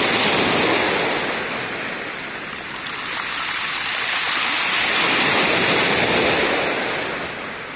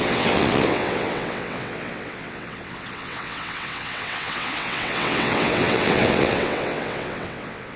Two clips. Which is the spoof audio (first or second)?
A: second